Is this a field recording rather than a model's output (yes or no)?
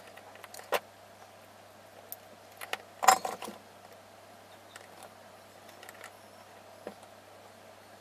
yes